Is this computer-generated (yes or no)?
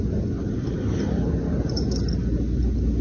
no